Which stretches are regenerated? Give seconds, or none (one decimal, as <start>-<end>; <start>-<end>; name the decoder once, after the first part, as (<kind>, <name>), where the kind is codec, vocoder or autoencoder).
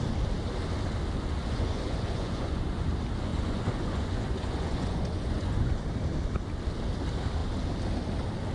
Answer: 1.4-2.9 (vocoder, Vocos); 3.3-5.8